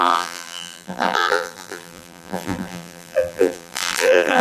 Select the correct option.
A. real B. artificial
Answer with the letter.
B